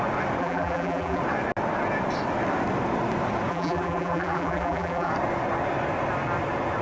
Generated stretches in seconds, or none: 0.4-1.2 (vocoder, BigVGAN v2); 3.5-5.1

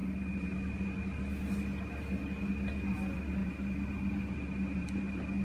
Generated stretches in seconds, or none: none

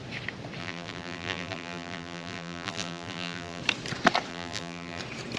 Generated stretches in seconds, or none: 0.6-3.6 (vocoder, BigVGAN v2); 4.3-5.0

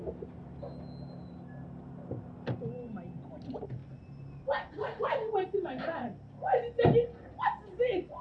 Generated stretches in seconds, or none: none

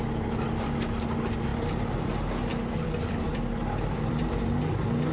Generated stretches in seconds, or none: 1.5-2.1 (vocoder, BigVGAN v2); 2.5-4.4

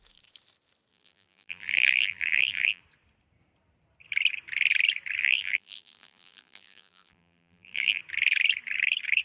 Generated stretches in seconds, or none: 0.9-2.8 (vocoder, BigVGAN v2); 5.2-8.0